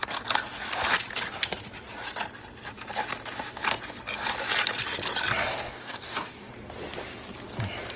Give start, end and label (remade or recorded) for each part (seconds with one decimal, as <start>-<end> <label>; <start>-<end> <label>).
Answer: 0.0-5.5 recorded; 5.5-6.5 remade; 6.5-8.0 recorded